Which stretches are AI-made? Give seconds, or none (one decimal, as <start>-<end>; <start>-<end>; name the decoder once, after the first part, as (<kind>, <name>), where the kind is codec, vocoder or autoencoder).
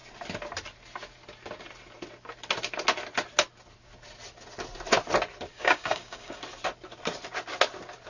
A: 5.5-6.4 (codec, DAC)